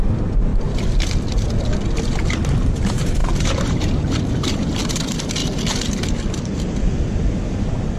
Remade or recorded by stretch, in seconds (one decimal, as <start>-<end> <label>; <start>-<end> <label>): 0.0-0.5 remade; 0.5-2.6 recorded; 2.6-5.4 remade; 5.4-8.0 recorded